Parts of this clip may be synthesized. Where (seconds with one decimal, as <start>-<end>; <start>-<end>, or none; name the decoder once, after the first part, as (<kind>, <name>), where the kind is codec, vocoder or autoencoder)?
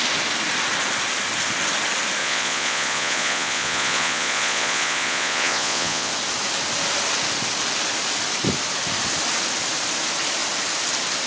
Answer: 2.2-6.1 (vocoder, Vocos)